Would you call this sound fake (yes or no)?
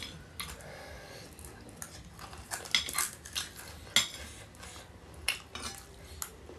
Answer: no